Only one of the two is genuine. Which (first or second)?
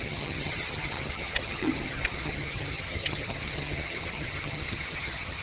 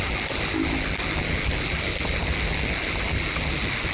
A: second